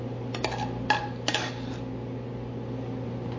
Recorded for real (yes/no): yes